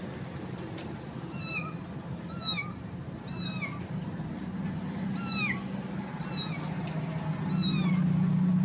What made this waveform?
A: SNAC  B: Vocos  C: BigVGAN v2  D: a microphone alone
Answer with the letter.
D